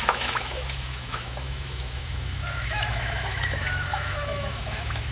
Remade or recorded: remade